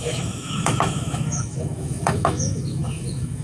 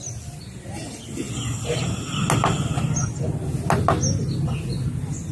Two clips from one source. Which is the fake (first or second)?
first